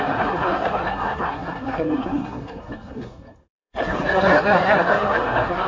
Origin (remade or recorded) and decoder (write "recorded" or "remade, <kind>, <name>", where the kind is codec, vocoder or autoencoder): remade, codec, SNAC